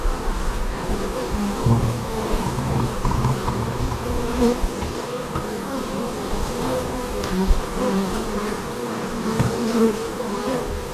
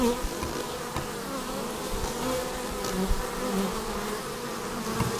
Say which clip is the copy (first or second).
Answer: first